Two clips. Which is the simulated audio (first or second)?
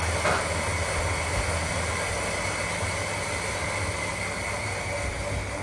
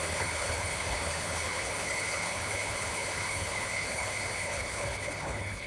second